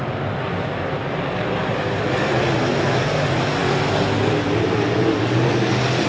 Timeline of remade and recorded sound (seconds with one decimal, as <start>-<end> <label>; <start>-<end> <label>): 0.0-6.1 recorded